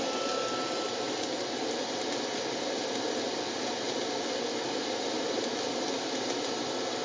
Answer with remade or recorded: recorded